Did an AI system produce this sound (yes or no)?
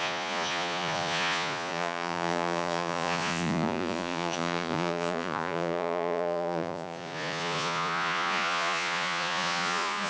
yes